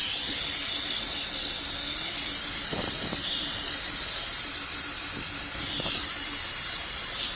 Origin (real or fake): real